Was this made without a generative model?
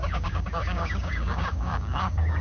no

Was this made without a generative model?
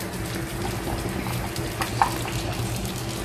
yes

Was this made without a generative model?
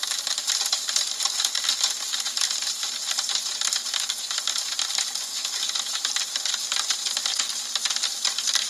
yes